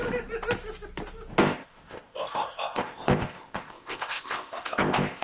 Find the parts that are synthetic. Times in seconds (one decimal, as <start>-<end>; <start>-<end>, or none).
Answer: 1.4-5.2